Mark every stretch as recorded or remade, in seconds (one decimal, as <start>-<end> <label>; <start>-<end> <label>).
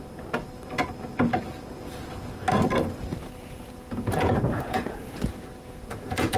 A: 0.0-3.2 recorded; 3.2-6.4 remade